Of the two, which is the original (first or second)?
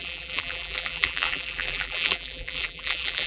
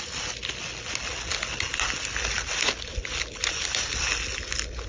second